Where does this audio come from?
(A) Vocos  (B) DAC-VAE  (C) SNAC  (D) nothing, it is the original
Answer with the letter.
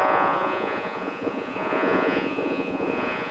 A